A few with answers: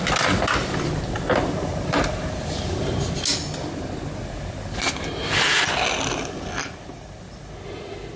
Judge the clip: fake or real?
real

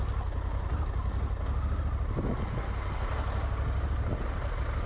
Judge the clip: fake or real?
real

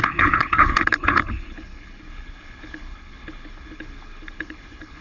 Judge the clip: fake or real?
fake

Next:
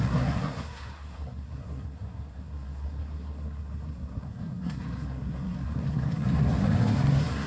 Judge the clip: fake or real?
fake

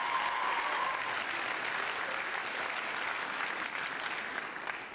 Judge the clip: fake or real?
real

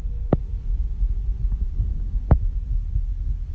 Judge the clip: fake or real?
real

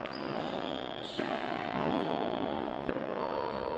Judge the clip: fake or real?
fake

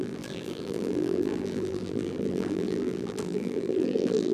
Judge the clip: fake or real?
fake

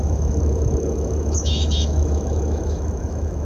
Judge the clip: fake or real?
fake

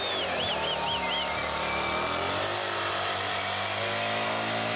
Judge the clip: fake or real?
real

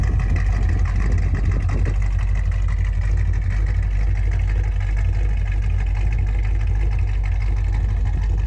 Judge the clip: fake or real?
real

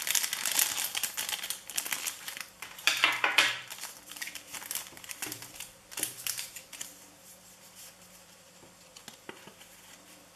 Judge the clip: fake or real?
fake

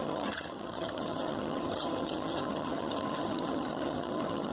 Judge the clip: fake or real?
fake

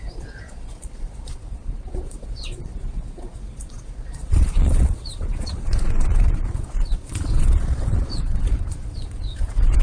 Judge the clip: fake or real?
fake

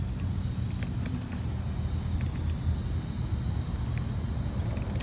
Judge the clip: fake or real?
real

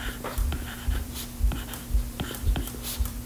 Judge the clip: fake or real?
fake